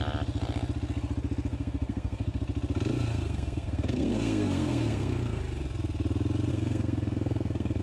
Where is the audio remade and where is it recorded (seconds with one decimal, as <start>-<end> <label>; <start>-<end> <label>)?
0.0-1.5 recorded; 1.5-2.4 remade; 2.4-3.1 recorded; 3.1-5.4 remade; 5.4-6.5 recorded; 6.5-7.8 remade